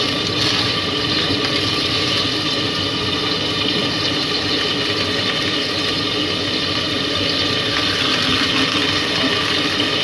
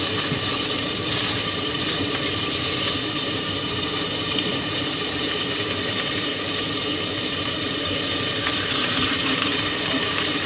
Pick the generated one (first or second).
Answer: second